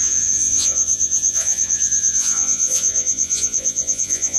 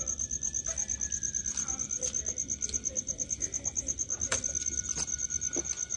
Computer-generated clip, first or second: first